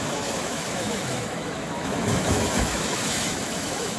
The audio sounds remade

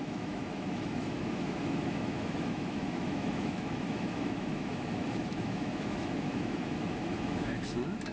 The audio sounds remade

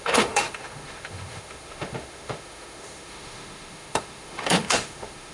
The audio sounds remade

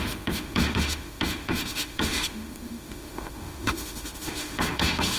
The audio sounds remade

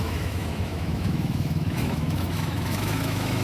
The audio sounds remade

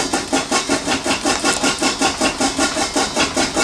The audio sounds recorded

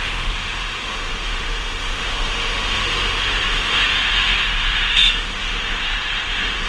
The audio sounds remade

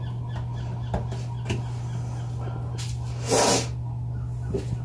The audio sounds recorded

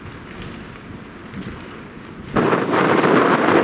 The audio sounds recorded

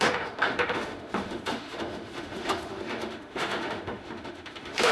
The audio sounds remade